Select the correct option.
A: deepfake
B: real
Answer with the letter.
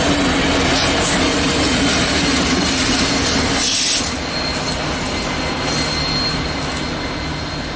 B